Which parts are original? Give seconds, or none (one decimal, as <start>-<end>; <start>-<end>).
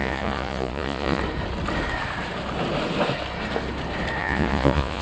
1.2-4.2